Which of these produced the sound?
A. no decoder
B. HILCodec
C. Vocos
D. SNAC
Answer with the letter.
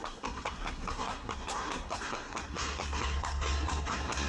D